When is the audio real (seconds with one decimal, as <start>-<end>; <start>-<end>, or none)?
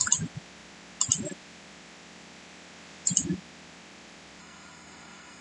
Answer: 0.0-4.4